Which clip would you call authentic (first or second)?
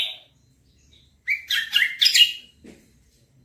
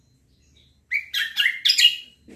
second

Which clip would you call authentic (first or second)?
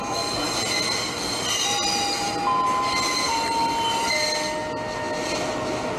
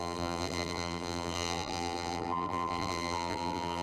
first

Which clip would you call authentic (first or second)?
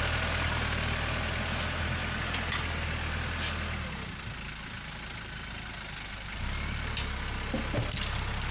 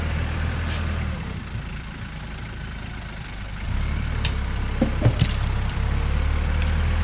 first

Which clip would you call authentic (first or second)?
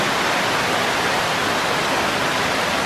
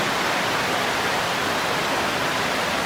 first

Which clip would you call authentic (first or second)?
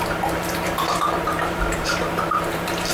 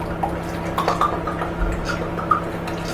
second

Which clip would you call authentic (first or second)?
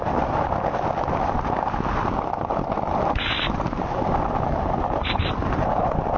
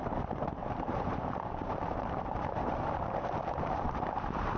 first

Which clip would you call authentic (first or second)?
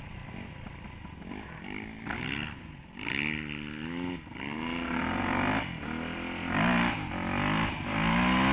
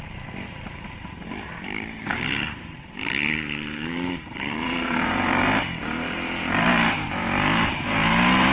first